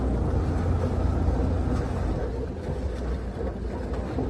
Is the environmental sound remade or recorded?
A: recorded